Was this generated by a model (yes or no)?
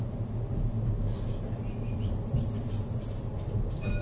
no